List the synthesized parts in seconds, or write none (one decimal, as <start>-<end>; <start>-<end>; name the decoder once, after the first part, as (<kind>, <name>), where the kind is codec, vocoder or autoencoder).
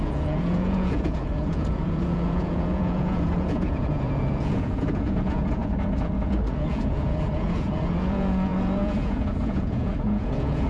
0.0-10.7 (vocoder, Vocos)